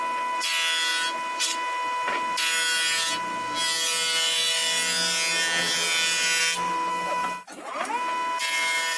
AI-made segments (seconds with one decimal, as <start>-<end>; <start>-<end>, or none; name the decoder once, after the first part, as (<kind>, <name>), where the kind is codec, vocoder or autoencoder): 6.9-7.7 (autoencoder, DAC-VAE)